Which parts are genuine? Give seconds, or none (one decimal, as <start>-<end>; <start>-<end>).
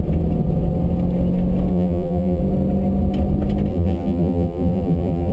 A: 0.0-1.7; 2.4-3.7